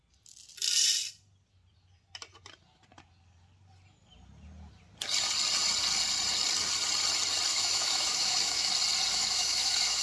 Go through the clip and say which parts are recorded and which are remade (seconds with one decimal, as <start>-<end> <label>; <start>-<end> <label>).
0.0-7.5 recorded; 7.5-8.7 remade; 8.7-9.1 recorded; 9.1-10.0 remade